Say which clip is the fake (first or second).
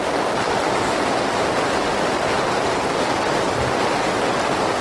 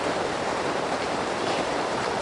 second